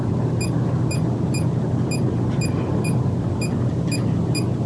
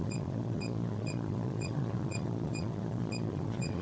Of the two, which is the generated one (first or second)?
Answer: second